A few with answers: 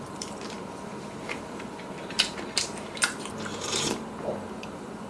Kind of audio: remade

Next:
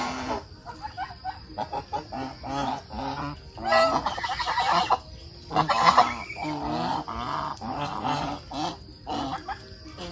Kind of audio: recorded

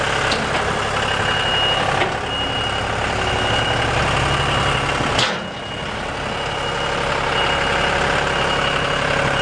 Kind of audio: recorded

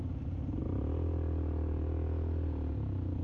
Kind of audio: recorded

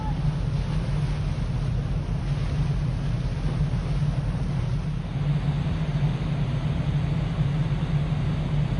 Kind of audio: recorded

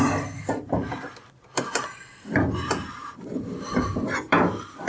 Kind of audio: recorded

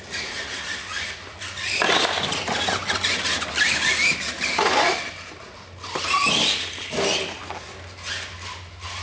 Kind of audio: recorded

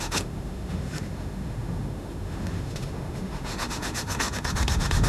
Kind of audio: remade